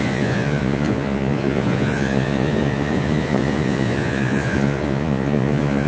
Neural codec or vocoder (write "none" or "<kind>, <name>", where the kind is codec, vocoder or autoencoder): vocoder, Vocos